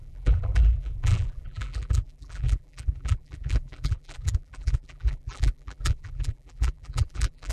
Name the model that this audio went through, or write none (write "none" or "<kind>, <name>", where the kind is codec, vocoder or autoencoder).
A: vocoder, BigVGAN v2